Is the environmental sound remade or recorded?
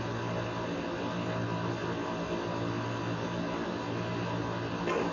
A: recorded